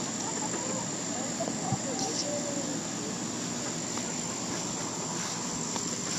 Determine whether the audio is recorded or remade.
recorded